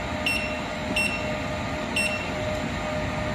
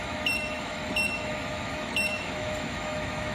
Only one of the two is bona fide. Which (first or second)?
first